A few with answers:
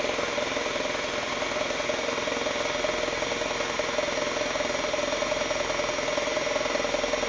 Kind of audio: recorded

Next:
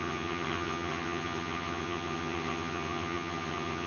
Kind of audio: remade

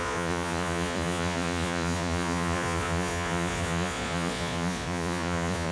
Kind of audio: remade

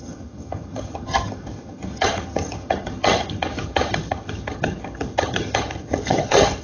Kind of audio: remade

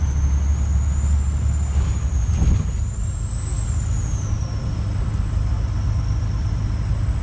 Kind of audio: recorded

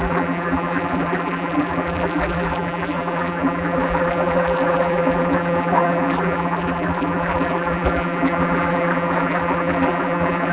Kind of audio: remade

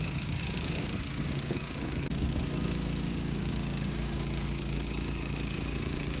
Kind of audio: remade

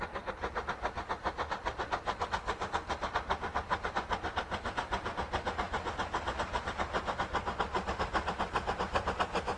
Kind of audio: recorded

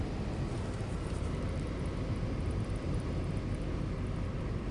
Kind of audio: remade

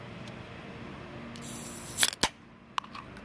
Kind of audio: recorded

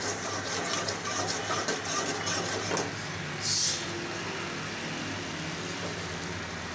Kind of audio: recorded